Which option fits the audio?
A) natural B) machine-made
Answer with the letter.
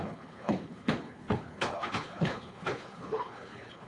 B